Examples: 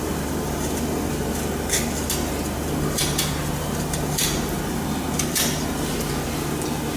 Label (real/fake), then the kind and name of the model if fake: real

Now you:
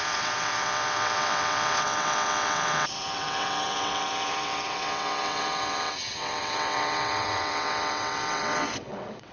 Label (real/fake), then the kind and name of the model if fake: fake, vocoder, WaveNeXt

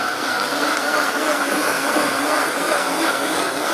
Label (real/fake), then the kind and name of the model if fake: fake, codec, SNAC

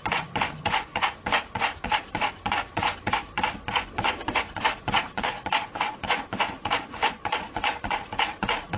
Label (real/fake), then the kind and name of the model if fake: fake, vocoder, Vocos